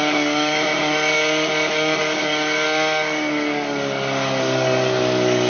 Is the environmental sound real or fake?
fake